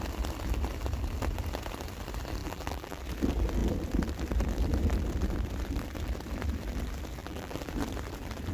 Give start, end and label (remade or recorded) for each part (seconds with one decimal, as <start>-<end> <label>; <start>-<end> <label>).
0.0-2.4 recorded; 2.4-3.0 remade; 3.0-7.2 recorded; 7.2-7.7 remade; 7.7-8.5 recorded